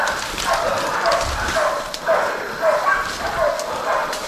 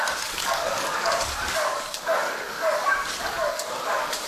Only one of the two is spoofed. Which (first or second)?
second